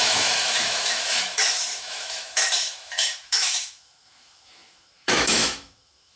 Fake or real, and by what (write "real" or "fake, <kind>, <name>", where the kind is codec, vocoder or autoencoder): fake, autoencoder, DAC-VAE